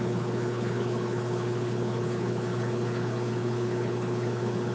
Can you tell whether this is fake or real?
fake